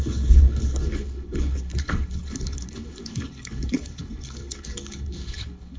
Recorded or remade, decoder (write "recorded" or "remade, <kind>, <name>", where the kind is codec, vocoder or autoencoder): remade, codec, HILCodec